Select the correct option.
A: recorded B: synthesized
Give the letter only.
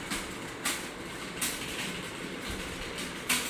A